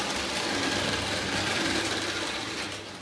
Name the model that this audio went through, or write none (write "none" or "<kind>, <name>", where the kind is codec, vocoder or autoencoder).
none